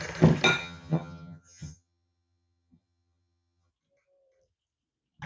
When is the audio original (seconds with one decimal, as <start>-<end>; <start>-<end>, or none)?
0.0-0.6; 3.7-5.3